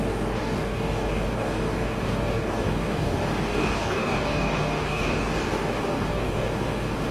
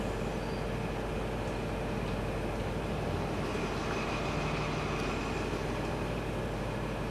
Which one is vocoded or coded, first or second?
first